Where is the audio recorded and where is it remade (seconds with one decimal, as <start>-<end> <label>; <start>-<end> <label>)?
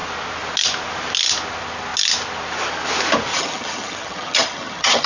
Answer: 0.0-3.3 recorded; 3.3-5.1 remade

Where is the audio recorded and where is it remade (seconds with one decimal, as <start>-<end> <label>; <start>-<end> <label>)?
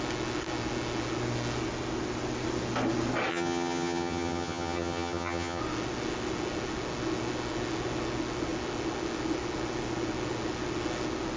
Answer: 0.0-3.3 recorded; 3.3-5.6 remade; 5.6-11.4 recorded